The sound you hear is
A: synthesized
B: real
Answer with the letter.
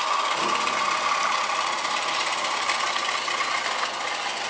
B